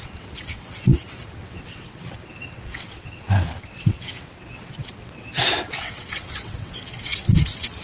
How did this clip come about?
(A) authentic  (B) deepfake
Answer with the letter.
B